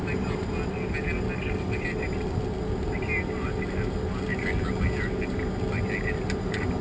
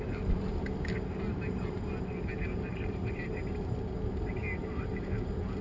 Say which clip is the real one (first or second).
first